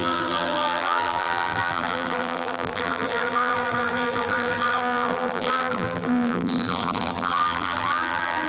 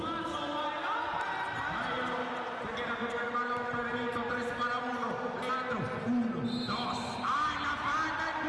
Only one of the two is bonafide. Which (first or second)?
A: second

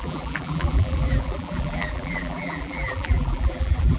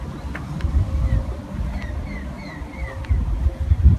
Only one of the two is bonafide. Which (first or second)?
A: second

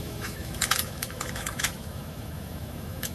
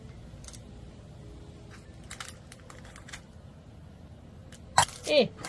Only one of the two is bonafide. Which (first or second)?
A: second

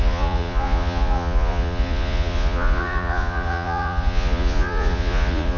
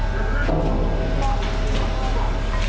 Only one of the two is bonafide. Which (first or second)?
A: second